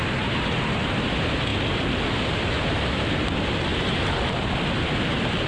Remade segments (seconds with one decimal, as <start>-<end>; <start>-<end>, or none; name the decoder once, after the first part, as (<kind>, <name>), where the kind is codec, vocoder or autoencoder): 3.7-4.5 (vocoder, BigVGAN v2)